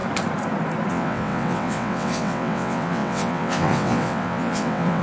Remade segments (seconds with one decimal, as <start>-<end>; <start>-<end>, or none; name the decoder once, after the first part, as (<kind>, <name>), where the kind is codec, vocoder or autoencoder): 0.9-5.0 (vocoder, WaveNeXt)